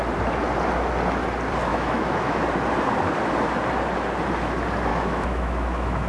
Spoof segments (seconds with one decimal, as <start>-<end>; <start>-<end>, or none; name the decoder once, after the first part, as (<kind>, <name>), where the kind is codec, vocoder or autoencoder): 1.7-2.4 (autoencoder, DAC-VAE); 4.9-6.1